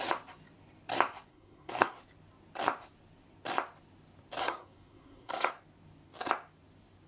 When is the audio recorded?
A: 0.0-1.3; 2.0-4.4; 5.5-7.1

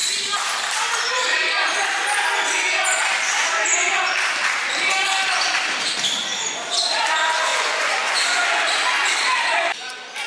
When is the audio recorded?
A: 0.0-7.5; 8.6-10.3

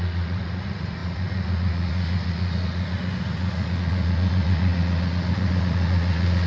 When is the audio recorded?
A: none

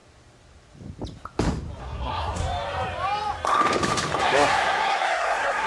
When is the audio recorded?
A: 0.0-1.8; 2.4-4.2

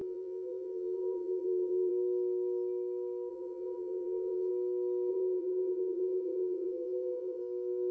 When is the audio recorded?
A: 1.9-3.3; 4.5-5.1; 7.4-7.9

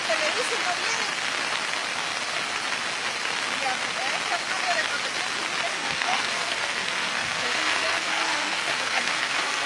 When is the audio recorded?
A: 0.0-5.7

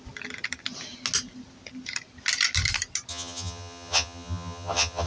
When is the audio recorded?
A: 0.0-3.1

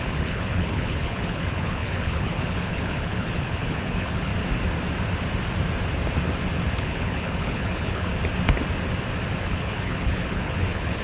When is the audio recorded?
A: 4.3-6.8; 8.1-9.4